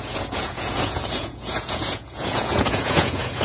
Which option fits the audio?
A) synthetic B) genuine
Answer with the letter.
A